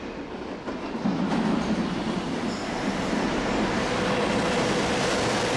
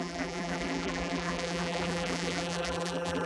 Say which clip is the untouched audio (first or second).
first